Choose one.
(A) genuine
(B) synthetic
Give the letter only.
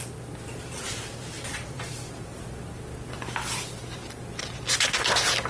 A